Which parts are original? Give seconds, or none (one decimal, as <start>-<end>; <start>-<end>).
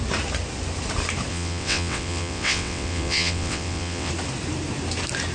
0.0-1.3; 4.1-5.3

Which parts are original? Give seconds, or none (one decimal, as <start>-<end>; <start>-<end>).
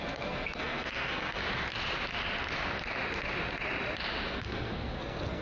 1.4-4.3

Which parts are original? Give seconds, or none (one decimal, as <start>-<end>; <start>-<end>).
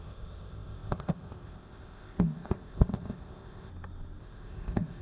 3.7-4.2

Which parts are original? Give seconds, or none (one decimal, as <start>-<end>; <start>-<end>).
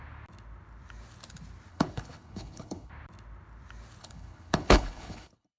0.0-1.7; 2.9-4.0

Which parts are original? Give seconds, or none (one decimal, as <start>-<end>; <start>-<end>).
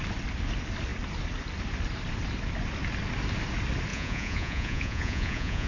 0.0-3.9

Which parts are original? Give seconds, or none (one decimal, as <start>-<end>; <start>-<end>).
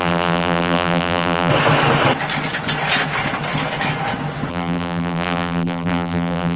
1.5-4.5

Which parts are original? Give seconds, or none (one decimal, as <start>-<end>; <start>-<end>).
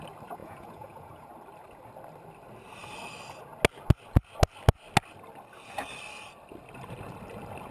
0.0-0.4; 1.3-7.7